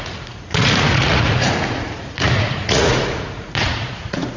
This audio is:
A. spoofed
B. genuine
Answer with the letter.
A